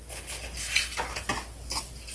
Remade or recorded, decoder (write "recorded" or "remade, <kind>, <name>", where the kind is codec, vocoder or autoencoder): recorded